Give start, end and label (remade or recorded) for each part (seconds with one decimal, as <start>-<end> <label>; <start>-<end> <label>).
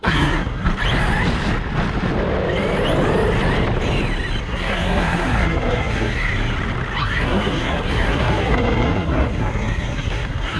0.0-0.7 remade; 0.7-4.4 recorded; 4.4-6.3 remade; 6.3-7.0 recorded; 7.0-10.6 remade